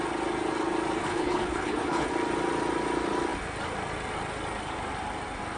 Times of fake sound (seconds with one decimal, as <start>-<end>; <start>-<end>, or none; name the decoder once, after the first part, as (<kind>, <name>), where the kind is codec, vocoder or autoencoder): 1.0-2.1 (codec, HILCodec)